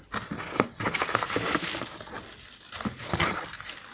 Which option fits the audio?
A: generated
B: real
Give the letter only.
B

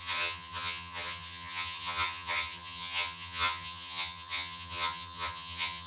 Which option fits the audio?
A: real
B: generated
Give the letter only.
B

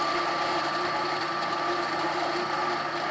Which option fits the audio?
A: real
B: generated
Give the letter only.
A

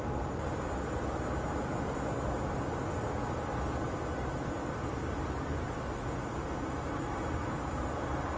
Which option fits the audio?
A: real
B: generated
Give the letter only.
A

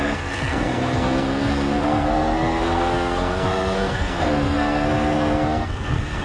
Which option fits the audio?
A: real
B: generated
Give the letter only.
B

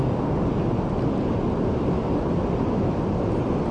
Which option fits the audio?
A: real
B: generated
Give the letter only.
A